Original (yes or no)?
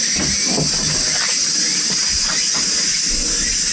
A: yes